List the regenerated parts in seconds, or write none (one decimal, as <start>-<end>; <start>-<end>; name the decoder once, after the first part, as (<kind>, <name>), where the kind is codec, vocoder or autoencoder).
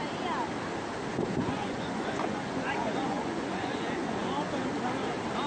1.4-4.7 (vocoder, Vocos)